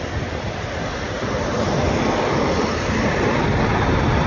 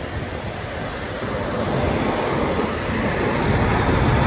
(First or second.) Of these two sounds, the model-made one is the first